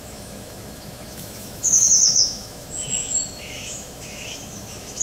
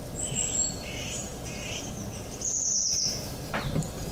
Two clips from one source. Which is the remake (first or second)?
first